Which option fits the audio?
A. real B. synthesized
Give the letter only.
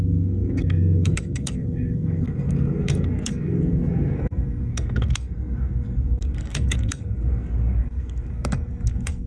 B